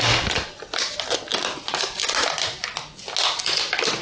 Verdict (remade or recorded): recorded